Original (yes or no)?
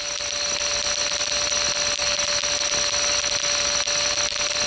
yes